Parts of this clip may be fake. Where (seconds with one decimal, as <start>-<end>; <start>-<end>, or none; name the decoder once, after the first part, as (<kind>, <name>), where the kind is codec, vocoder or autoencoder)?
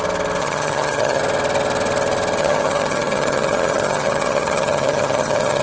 0.4-1.2 (vocoder, HiFi-GAN); 2.4-5.6